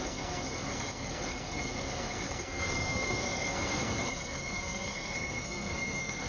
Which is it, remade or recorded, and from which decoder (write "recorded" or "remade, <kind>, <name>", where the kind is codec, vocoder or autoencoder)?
remade, codec, SNAC